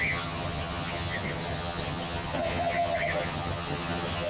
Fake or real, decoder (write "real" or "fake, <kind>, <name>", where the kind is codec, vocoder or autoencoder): fake, vocoder, HiFi-GAN